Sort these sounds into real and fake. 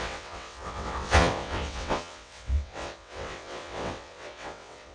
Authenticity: fake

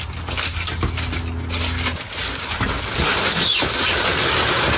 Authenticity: real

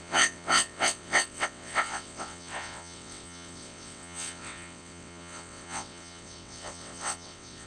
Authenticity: fake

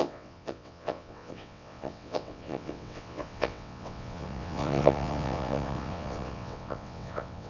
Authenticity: fake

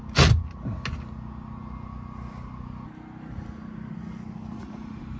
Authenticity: real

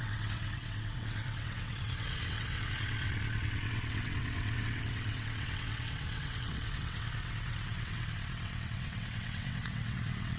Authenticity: fake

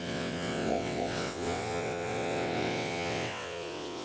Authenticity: fake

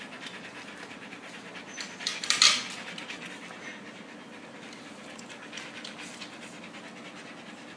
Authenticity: real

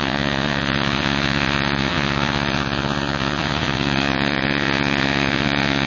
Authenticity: fake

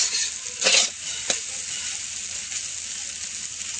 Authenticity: real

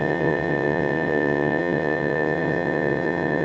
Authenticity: fake